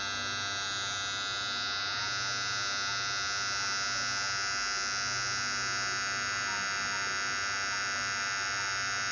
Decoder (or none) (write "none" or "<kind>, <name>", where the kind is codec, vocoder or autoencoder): none